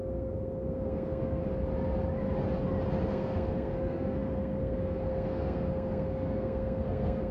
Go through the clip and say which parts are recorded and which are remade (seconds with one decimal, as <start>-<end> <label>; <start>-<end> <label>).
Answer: 0.0-1.4 remade; 1.4-3.1 recorded; 3.1-7.3 remade